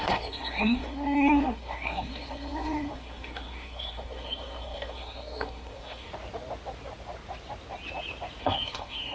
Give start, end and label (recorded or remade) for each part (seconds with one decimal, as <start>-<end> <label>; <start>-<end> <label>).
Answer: 0.0-6.1 remade; 6.1-8.4 recorded; 8.4-9.1 remade